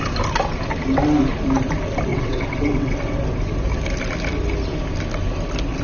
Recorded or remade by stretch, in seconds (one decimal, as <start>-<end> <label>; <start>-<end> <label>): 0.0-2.1 recorded; 2.1-3.2 remade; 3.2-5.8 recorded